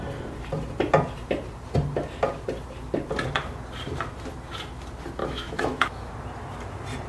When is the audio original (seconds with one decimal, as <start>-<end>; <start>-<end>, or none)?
0.0-5.2; 6.1-7.1